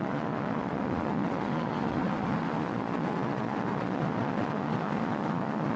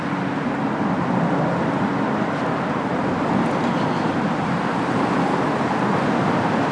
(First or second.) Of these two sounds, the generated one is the first